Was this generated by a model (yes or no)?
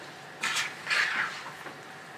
no